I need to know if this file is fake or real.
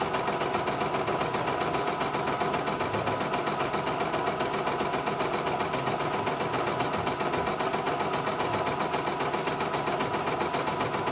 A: real